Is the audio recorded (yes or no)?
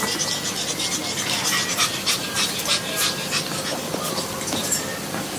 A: yes